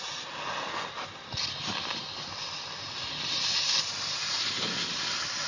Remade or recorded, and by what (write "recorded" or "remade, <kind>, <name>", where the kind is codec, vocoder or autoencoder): recorded